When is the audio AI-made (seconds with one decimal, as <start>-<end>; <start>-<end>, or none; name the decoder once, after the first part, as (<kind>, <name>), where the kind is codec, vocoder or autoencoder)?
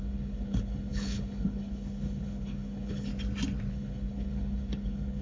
0.0-3.1 (codec, HILCodec); 3.7-5.2